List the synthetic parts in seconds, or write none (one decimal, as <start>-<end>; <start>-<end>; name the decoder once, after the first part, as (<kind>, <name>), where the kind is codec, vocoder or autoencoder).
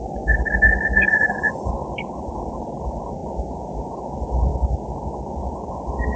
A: 1.1-1.7 (vocoder, Vocos)